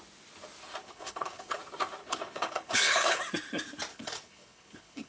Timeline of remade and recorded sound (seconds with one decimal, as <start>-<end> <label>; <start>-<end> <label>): 0.0-0.8 recorded; 0.8-1.6 remade; 1.6-2.0 recorded; 2.0-3.2 remade; 3.2-3.9 recorded; 3.9-5.1 remade